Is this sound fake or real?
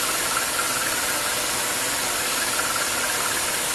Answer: real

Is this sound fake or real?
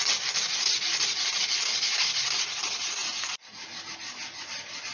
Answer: real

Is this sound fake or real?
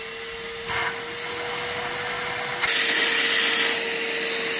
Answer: real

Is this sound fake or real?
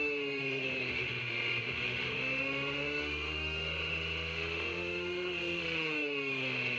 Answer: fake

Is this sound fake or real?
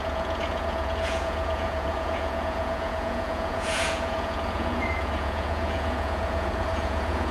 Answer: fake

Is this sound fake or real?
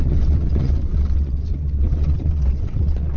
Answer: fake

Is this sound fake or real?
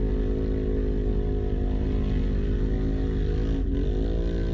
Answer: real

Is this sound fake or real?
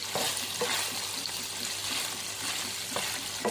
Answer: real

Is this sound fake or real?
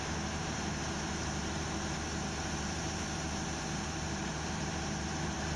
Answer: fake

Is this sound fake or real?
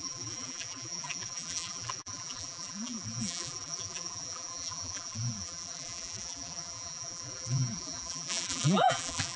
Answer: fake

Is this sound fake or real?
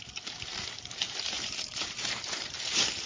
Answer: fake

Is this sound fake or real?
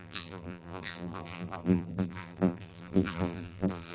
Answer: fake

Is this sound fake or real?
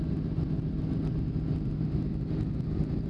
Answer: real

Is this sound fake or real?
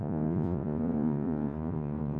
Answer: fake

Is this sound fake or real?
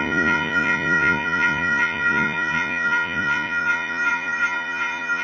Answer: fake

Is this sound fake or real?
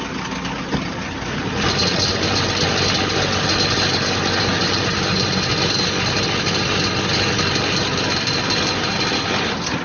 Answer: real